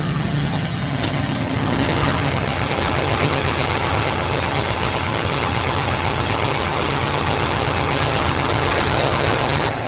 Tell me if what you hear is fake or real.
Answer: fake